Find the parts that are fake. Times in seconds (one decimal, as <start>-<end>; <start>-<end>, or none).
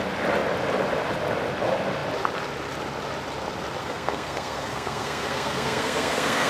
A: 3.8-6.5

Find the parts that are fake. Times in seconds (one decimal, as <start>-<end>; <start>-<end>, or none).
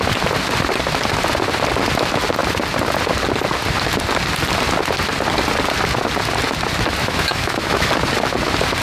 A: 7.0-7.9